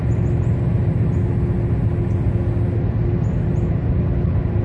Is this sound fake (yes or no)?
no